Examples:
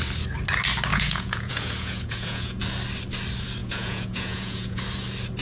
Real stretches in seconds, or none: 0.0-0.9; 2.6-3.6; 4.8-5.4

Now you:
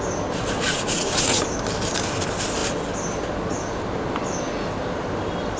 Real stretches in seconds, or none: 0.0-0.7; 1.4-5.6

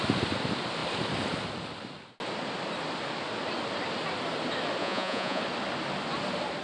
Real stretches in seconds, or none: 0.0-4.8; 5.4-6.6

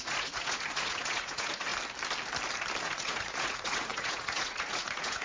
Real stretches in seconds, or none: 1.7-2.8